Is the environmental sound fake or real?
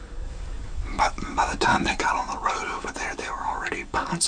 fake